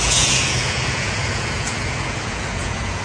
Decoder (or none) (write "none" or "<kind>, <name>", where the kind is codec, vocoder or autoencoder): vocoder, Vocos